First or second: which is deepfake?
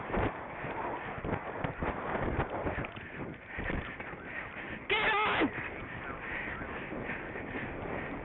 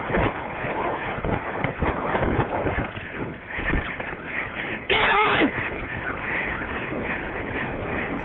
second